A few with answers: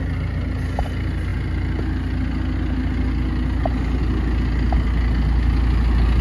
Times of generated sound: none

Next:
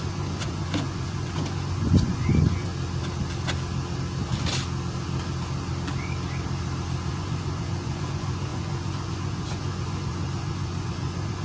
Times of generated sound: 0.0-2.7 (vocoder, Vocos); 7.1-11.4

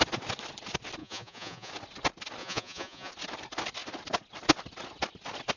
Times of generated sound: 1.0-1.7 (vocoder, Vocos); 2.4-3.1

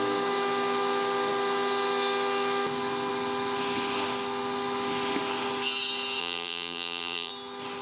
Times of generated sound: 6.2-7.3 (vocoder, BigVGAN v2)

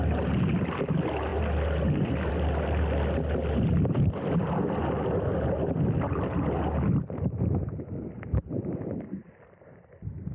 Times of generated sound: none